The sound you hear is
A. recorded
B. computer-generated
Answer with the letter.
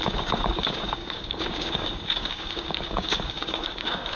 B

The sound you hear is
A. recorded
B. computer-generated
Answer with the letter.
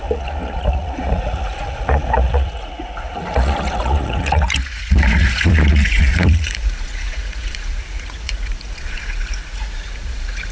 B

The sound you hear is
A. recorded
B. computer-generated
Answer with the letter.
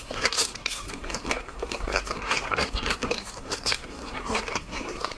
B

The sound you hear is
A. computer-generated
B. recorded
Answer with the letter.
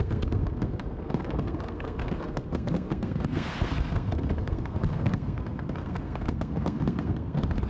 A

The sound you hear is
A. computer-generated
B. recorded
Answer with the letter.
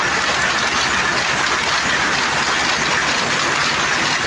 B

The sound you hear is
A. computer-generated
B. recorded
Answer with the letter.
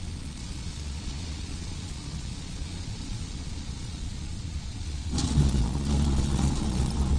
A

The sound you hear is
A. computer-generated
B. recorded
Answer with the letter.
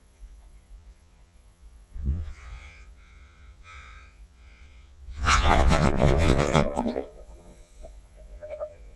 A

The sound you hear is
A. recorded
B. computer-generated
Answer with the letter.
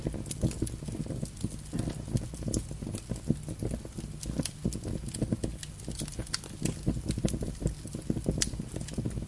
A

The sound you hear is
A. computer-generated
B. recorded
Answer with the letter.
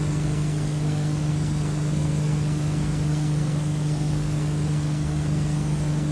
A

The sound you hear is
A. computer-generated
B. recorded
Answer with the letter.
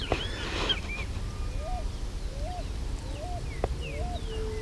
B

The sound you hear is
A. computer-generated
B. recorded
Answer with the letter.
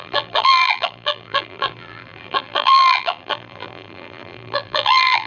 A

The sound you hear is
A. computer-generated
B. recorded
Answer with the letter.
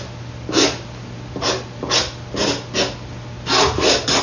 B